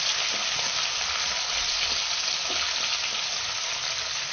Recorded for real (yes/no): yes